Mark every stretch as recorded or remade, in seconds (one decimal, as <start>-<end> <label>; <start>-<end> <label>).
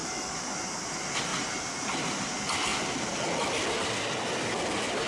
0.0-0.5 remade; 0.5-5.1 recorded